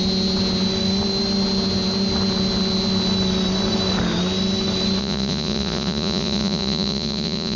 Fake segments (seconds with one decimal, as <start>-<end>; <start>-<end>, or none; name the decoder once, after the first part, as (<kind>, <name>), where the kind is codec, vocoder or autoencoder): 5.0-7.6 (vocoder, Vocos)